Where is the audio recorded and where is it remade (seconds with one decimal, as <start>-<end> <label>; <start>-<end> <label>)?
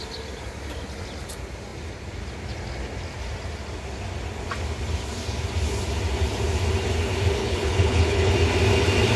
0.0-7.4 recorded; 7.4-8.3 remade; 8.3-9.2 recorded